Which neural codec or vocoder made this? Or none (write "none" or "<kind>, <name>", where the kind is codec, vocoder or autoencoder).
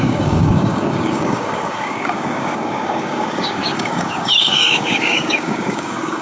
codec, DAC